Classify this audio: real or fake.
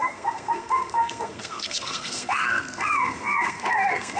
fake